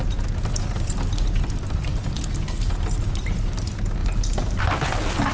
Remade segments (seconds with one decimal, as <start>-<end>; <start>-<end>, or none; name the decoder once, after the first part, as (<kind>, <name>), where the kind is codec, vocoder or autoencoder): none